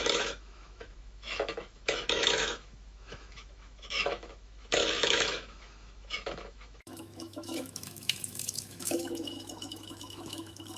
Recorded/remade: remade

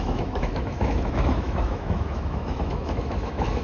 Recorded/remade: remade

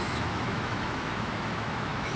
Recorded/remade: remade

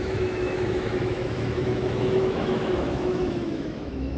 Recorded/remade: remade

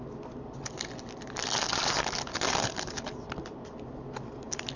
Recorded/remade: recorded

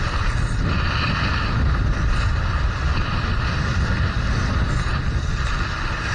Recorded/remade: recorded